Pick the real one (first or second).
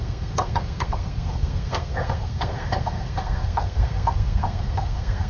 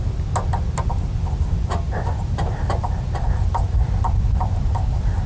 second